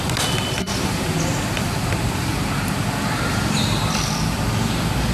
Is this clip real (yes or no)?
yes